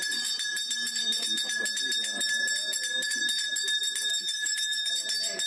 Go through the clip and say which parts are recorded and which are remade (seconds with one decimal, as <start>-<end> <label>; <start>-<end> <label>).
0.0-4.1 recorded; 4.1-4.9 remade; 4.9-5.5 recorded